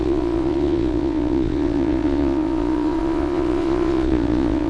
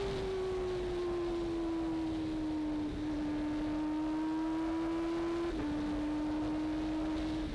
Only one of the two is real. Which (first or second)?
second